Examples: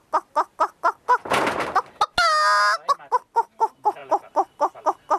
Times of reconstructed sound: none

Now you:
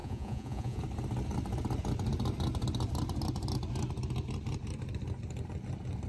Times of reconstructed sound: 0.0-0.8 (vocoder, Vocos)

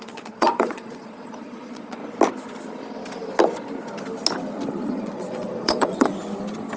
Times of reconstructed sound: 0.0-2.0 (vocoder, Vocos); 4.9-6.1

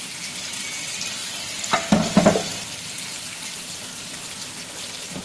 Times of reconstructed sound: none